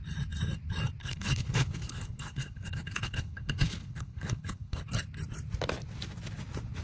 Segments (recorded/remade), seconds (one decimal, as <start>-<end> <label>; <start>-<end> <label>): 0.0-1.0 recorded; 1.0-4.8 remade; 4.8-6.8 recorded